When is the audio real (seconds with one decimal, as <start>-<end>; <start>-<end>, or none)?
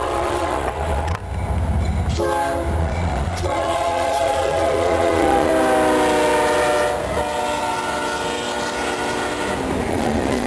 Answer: 1.2-2.8; 5.5-9.9